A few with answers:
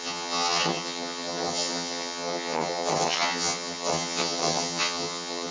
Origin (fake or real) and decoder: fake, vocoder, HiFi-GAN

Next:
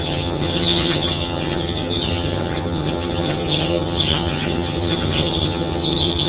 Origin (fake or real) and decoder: fake, vocoder, HiFi-GAN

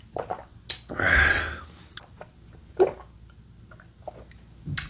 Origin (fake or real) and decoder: real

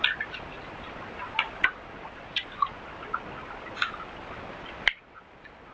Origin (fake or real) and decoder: real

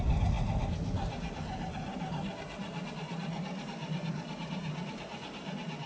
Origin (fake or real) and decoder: real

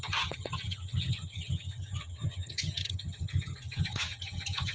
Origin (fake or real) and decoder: fake, vocoder, HiFi-GAN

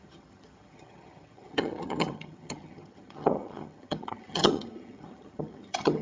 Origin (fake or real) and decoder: fake, vocoder, HiFi-GAN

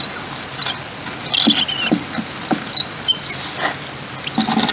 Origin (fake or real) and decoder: real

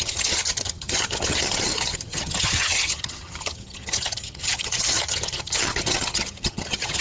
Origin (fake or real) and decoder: fake, vocoder, HiFi-GAN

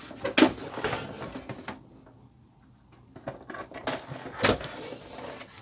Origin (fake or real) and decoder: real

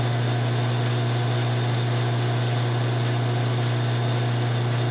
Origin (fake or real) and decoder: real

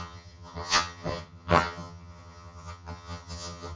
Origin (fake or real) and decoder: fake, vocoder, HiFi-GAN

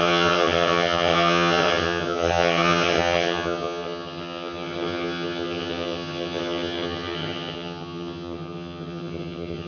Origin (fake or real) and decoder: fake, vocoder, HiFi-GAN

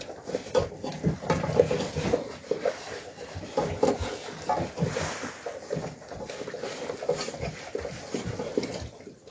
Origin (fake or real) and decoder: real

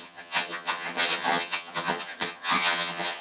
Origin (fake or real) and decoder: fake, vocoder, HiFi-GAN